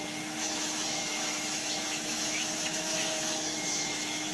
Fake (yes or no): yes